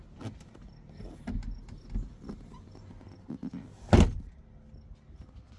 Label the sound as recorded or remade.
recorded